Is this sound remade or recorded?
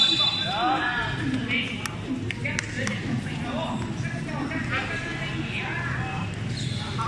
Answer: recorded